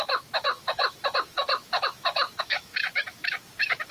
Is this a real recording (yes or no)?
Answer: no